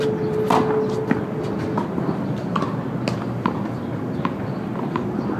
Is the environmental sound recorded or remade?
recorded